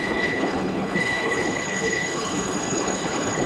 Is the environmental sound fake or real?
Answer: fake